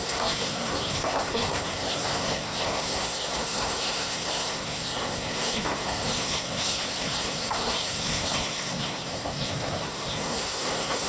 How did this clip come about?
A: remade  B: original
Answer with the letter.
A